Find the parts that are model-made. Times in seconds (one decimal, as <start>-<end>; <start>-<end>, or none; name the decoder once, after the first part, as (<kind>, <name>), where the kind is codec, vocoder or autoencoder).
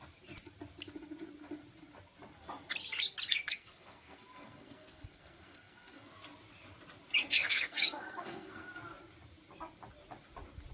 3.3-6.1 (codec, SNAC); 7.2-8.8